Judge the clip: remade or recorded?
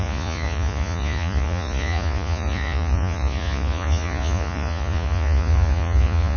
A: remade